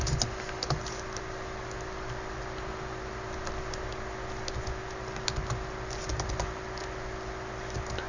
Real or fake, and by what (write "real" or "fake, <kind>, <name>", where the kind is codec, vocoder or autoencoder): real